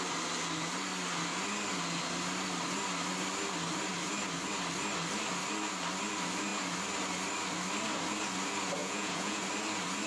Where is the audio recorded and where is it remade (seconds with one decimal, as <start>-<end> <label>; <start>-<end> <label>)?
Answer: 0.0-8.8 recorded; 8.8-9.4 remade; 9.4-10.1 recorded